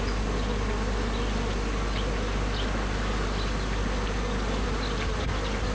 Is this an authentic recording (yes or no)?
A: yes